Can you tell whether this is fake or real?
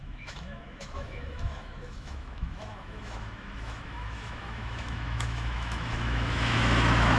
fake